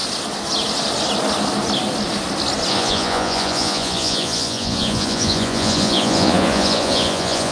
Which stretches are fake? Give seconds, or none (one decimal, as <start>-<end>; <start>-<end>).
2.7-7.5